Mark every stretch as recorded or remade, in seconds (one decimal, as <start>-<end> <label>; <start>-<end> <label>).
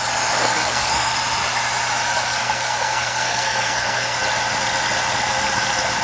0.0-0.4 recorded; 0.4-1.1 remade; 1.1-2.4 recorded; 2.4-4.2 remade; 4.2-6.0 recorded